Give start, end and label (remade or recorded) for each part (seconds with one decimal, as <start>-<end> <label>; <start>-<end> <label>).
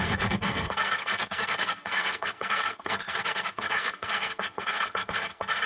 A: 0.0-5.7 remade